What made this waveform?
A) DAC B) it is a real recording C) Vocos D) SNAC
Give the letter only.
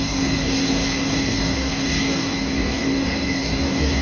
A